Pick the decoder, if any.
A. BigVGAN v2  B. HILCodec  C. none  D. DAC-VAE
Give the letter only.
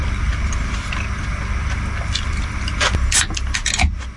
C